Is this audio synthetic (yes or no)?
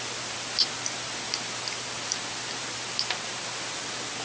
no